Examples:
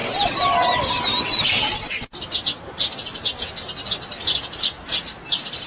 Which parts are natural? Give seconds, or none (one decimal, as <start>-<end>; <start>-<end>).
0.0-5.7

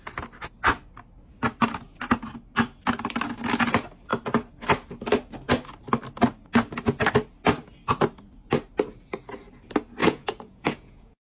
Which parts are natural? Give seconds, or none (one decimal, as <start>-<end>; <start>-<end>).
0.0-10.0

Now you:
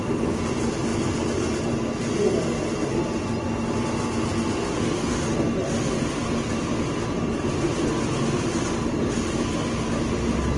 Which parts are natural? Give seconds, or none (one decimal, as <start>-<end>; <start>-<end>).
0.0-10.6

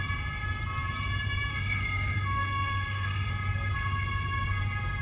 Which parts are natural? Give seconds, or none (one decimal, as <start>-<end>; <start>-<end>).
0.0-1.5; 3.3-5.0